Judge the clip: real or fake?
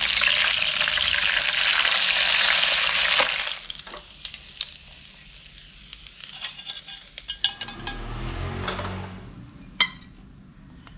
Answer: real